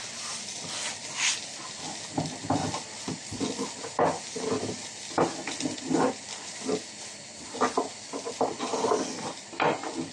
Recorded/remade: recorded